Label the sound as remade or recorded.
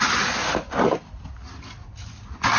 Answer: recorded